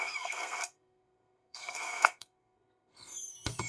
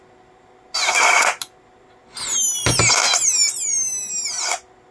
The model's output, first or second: first